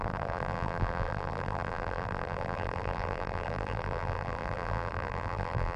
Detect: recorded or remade remade